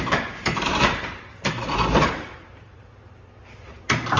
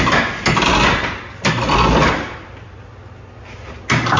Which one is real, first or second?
second